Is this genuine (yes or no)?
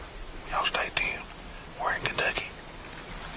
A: yes